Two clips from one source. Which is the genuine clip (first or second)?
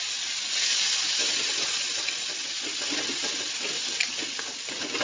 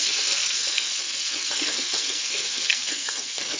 first